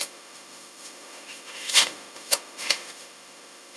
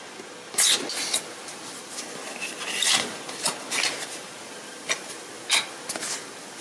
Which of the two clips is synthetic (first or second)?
first